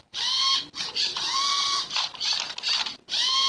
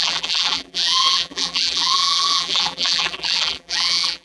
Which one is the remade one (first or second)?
second